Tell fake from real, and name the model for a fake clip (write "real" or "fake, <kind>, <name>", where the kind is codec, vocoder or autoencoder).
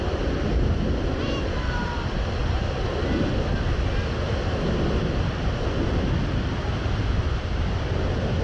real